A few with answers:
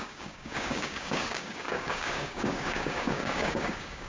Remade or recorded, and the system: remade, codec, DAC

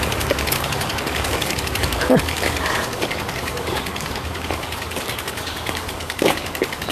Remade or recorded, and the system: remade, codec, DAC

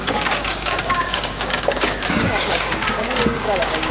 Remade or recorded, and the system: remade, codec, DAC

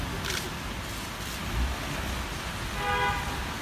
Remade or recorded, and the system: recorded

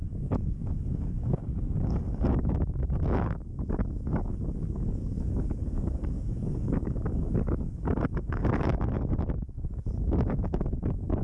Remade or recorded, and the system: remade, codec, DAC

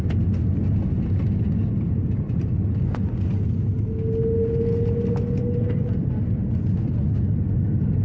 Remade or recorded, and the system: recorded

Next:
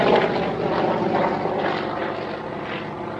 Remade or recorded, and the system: recorded